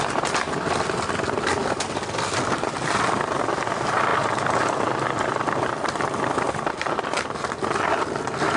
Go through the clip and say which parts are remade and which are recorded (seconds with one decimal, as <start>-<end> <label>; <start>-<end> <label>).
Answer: 0.0-8.6 recorded